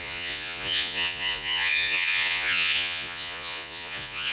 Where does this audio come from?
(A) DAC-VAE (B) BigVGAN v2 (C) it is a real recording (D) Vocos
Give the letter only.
D